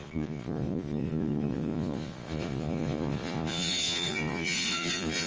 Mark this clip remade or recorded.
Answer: remade